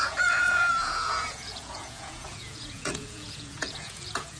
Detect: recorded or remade remade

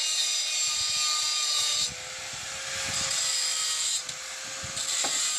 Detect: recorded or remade recorded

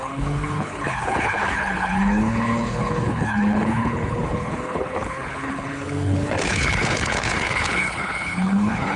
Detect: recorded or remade remade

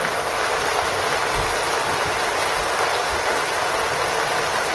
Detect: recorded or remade recorded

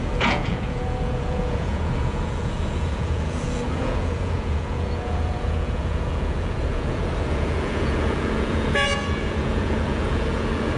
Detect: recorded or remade remade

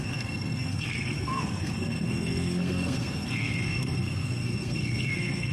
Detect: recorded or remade remade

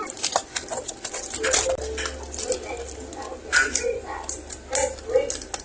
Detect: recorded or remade recorded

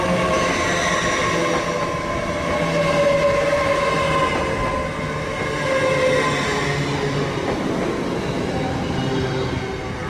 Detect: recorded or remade recorded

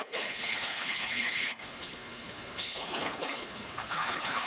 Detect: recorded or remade remade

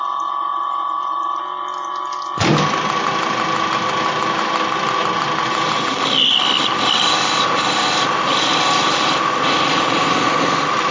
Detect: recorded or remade recorded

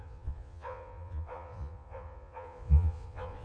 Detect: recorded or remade remade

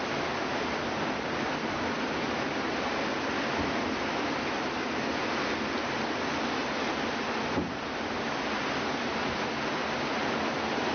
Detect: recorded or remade recorded